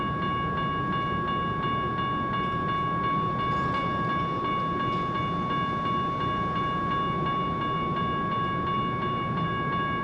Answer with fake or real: real